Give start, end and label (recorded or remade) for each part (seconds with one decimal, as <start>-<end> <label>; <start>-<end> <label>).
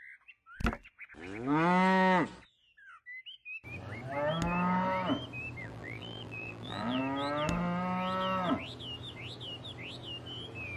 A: 0.0-5.6 recorded; 5.6-7.0 remade; 7.0-10.8 recorded